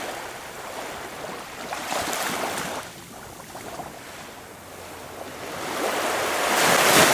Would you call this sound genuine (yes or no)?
yes